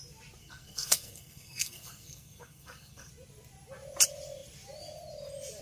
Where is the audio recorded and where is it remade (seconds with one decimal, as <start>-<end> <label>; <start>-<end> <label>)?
0.0-0.4 recorded; 0.4-3.1 remade; 3.1-5.6 recorded